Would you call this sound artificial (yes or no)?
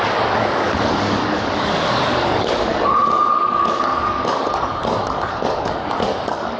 yes